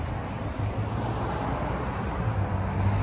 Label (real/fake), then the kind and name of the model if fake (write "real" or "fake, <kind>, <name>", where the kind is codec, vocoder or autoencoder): real